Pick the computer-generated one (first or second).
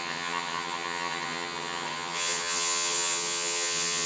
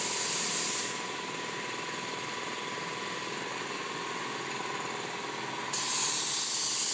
first